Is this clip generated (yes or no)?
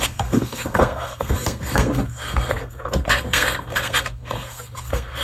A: yes